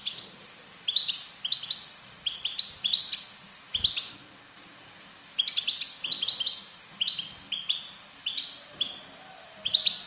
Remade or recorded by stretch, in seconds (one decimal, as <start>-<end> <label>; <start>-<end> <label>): 0.0-10.1 recorded